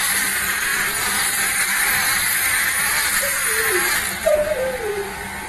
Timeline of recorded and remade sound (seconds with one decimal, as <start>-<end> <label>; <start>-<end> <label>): 0.0-5.5 remade